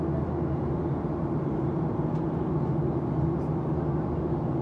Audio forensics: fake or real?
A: real